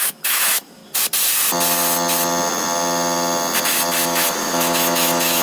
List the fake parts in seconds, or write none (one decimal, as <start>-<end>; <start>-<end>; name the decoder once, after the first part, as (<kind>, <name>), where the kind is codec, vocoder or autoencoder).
0.0-0.8 (autoencoder, DAC-VAE); 4.0-5.4